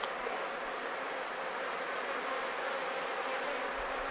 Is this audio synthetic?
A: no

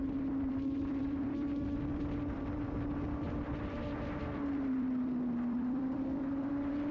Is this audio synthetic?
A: yes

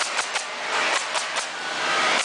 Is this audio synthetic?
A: yes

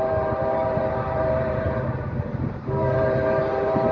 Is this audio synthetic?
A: yes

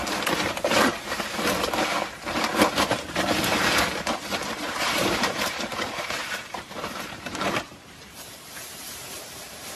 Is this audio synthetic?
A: yes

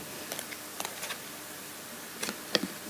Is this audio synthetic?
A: yes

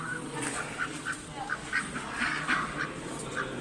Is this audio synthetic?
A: no